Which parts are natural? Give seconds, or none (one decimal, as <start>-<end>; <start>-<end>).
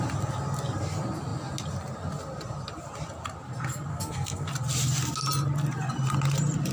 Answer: 0.0-3.9; 4.5-6.7